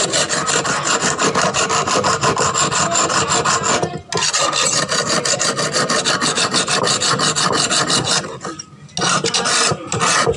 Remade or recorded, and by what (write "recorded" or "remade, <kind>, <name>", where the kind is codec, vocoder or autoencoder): recorded